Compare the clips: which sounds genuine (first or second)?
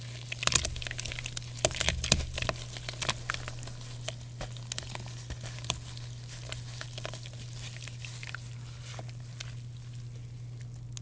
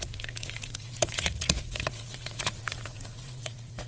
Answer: first